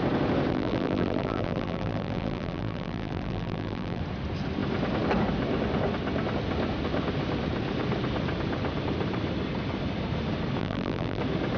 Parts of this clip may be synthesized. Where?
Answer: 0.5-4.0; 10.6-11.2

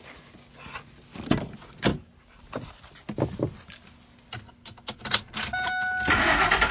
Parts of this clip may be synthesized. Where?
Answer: none

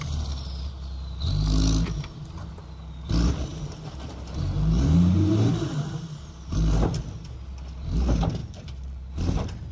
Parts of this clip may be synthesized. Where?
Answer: 3.5-5.5; 8.4-9.1

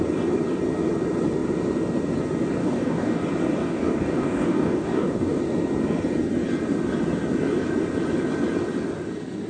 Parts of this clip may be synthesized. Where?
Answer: 2.6-3.2; 3.6-5.4

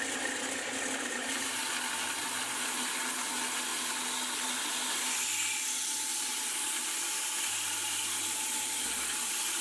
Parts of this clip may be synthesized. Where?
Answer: none

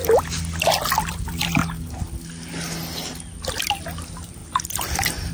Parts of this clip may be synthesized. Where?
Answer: 1.1-1.6; 4.0-4.4